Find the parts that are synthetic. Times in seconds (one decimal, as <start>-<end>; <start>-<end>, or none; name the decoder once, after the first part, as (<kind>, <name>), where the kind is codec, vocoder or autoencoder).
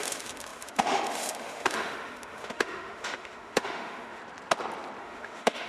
0.0-4.2 (autoencoder, DAC-VAE); 5.0-5.7